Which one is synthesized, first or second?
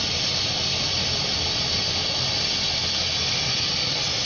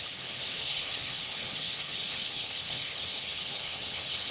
second